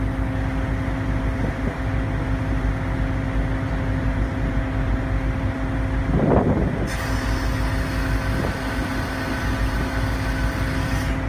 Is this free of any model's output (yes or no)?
yes